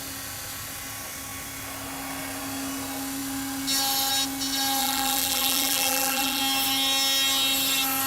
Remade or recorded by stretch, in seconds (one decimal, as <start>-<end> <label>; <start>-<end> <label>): 0.0-4.8 recorded; 4.8-6.4 remade; 6.4-8.1 recorded